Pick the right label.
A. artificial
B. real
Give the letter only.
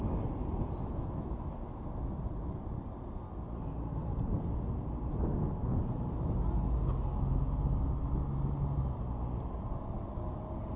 B